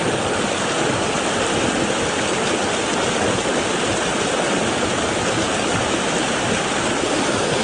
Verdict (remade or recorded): recorded